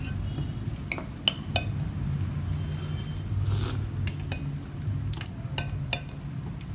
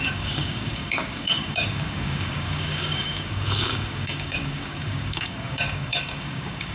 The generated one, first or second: second